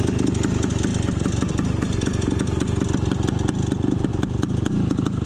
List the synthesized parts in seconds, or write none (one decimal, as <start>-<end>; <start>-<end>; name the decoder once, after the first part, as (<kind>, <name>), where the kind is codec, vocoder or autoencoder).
none